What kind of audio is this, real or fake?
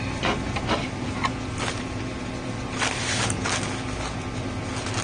real